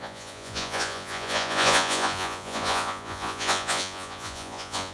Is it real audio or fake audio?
fake